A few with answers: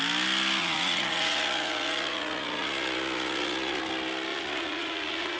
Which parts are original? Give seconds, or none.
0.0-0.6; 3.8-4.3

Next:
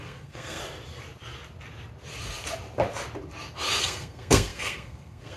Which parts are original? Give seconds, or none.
0.6-3.8

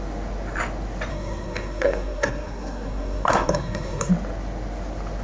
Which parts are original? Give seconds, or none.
0.0-1.1; 4.1-5.2

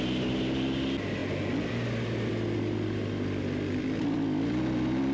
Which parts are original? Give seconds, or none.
0.0-5.1

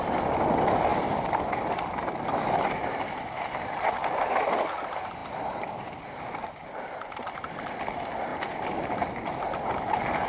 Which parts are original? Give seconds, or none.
0.0-0.9; 3.2-5.2; 6.2-10.3